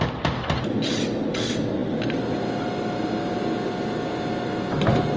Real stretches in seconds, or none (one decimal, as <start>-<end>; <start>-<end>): 0.0-5.2